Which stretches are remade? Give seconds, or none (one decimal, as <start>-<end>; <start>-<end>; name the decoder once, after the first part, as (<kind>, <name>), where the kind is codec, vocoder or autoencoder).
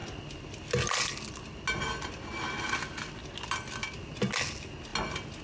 none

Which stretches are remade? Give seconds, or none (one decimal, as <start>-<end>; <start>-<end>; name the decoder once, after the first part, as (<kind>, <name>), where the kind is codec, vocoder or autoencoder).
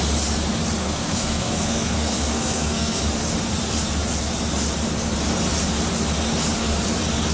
0.8-3.0 (codec, SNAC)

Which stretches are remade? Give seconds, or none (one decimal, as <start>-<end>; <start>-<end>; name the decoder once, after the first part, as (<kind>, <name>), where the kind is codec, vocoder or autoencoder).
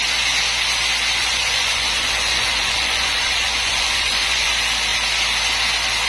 1.2-4.5 (vocoder, Vocos)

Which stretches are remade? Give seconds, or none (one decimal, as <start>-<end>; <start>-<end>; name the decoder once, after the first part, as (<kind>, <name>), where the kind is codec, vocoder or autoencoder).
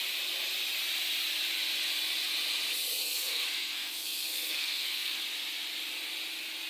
3.0-5.2 (codec, SNAC)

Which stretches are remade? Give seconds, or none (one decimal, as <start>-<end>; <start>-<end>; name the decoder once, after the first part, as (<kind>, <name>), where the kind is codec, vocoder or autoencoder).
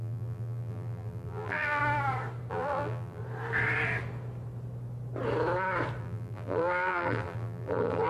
0.0-1.8 (vocoder, BigVGAN v2); 2.5-3.2; 6.0-8.1